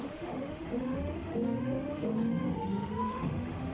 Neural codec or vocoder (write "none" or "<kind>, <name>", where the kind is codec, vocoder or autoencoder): autoencoder, DAC-VAE